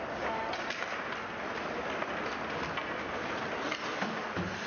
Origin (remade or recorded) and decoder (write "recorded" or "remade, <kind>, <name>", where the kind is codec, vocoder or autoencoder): recorded